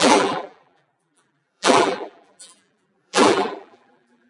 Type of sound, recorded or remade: remade